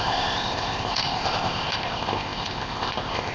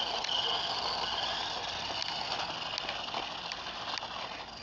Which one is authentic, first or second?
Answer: second